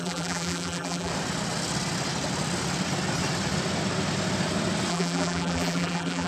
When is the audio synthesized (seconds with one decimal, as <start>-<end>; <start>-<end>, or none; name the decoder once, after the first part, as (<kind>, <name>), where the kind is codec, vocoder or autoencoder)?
0.0-1.1 (vocoder, BigVGAN v2); 4.9-6.3